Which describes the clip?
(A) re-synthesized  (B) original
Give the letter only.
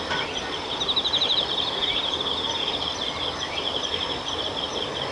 B